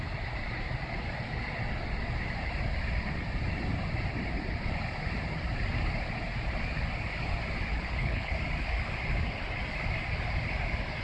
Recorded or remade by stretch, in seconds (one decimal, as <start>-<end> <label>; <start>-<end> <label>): 0.0-7.7 recorded; 7.7-8.3 remade; 8.3-11.0 recorded